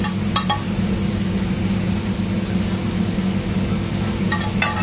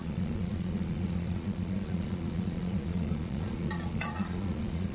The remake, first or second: second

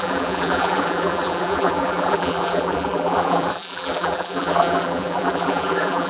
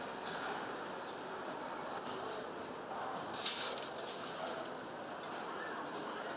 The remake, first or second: first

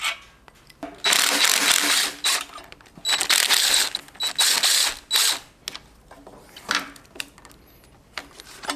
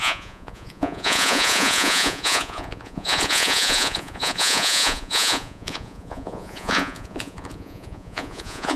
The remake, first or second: second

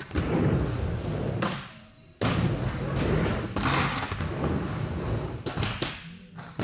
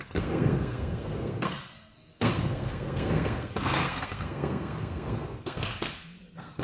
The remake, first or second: second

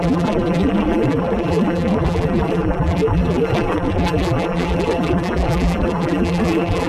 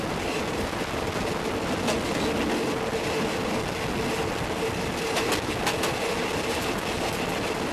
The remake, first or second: first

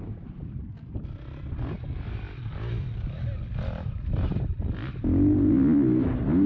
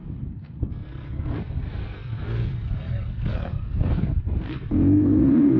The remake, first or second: second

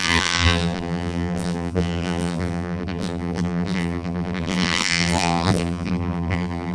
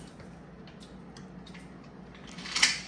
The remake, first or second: first